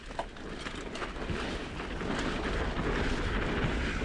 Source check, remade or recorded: recorded